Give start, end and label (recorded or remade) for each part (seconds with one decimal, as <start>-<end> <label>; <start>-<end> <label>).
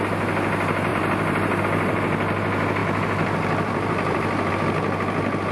0.0-0.9 recorded; 0.9-1.6 remade; 1.6-2.8 recorded; 2.8-4.5 remade; 4.5-5.5 recorded